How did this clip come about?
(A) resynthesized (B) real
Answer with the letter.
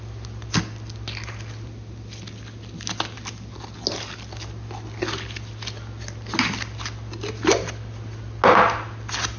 B